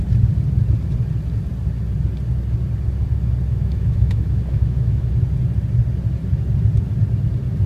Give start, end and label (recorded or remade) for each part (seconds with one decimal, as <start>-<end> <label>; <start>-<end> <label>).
0.0-3.5 recorded; 3.5-5.1 remade; 5.1-7.7 recorded